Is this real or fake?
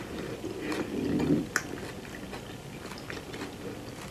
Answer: real